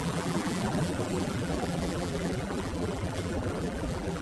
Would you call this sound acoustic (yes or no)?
no